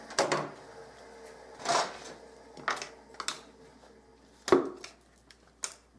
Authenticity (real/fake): real